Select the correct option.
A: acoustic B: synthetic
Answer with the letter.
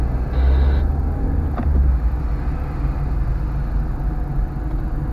A